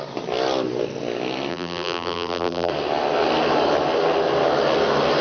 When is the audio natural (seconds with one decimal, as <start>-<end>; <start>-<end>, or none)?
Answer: 0.0-1.5; 2.7-5.2